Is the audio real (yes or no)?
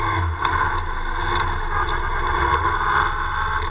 yes